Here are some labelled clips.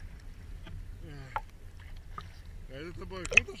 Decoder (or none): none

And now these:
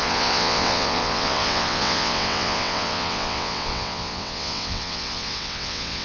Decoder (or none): vocoder, WaveNeXt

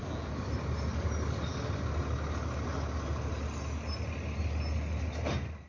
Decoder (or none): none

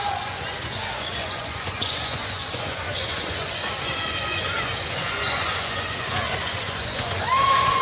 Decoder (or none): vocoder, Vocos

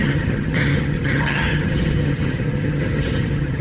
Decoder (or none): vocoder, HiFi-GAN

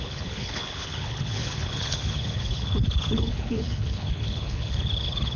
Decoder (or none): codec, HILCodec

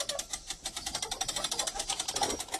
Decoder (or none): none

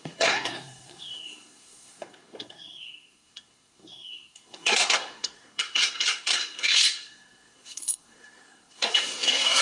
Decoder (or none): codec, SNAC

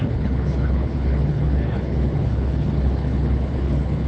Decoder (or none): codec, HILCodec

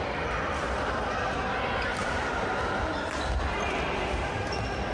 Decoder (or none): none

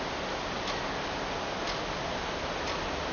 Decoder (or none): none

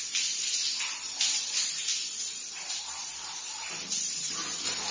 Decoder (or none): vocoder, BigVGAN v2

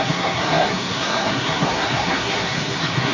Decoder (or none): codec, SNAC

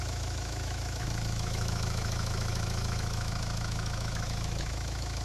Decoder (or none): autoencoder, DAC-VAE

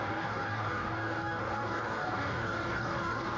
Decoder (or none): codec, DAC